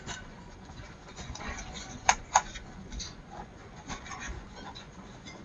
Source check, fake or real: fake